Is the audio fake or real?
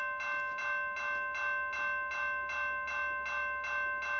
real